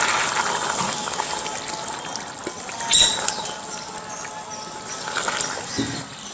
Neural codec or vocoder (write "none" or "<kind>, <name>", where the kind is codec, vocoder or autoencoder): none